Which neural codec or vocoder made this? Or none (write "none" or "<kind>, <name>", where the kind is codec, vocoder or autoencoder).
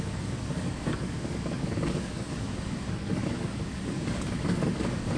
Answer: codec, DAC